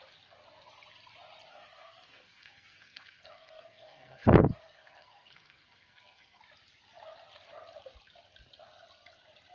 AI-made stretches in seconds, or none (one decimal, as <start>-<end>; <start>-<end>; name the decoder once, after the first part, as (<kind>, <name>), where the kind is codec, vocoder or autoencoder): 1.5-6.4 (codec, SNAC)